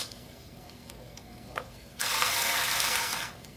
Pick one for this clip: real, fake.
fake